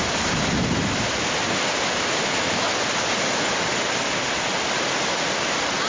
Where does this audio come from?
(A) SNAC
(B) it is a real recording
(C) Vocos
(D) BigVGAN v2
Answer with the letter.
B